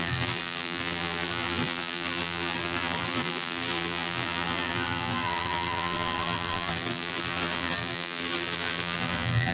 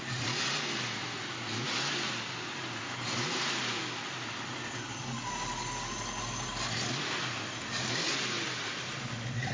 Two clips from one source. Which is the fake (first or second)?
first